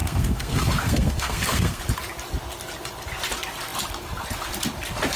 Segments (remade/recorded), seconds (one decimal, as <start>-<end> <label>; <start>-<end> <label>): 0.0-1.8 remade; 1.8-5.2 recorded